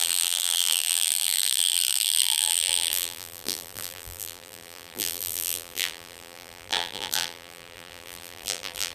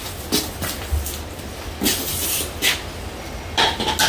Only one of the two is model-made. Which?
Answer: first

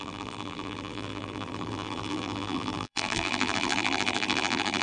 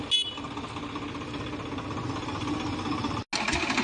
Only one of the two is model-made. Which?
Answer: first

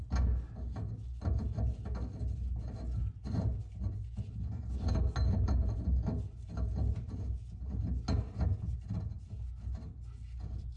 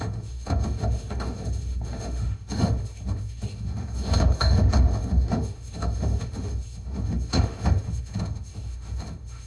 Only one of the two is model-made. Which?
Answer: second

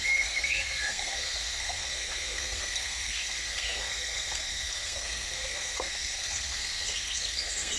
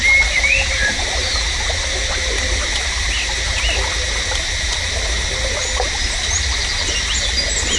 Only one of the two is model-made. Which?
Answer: first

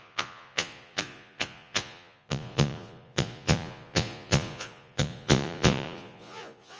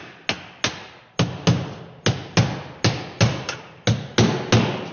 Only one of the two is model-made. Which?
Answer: first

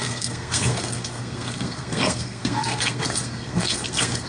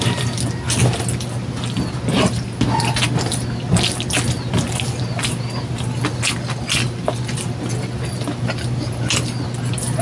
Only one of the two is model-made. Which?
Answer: first